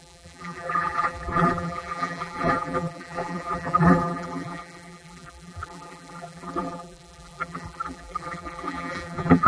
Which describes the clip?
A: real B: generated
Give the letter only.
B